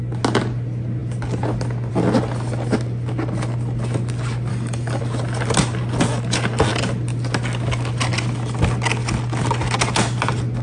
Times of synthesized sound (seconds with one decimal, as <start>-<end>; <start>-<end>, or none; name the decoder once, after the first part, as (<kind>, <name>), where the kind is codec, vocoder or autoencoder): 4.5-5.0 (codec, DAC)